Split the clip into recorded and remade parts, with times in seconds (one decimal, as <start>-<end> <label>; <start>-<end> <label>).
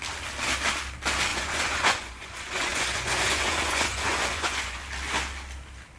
0.0-1.3 recorded; 1.3-4.8 remade; 4.8-6.0 recorded